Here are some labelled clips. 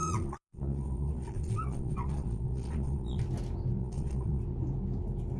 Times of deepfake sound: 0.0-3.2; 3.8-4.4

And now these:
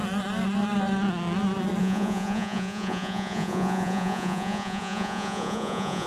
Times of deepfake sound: 1.8-6.1

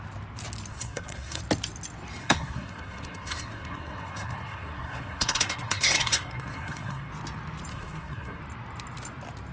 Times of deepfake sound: 0.7-1.4; 2.2-7.1; 7.7-8.4

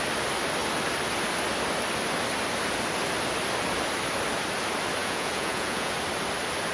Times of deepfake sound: 5.0-5.9